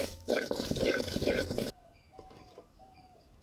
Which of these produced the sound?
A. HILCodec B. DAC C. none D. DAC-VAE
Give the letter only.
B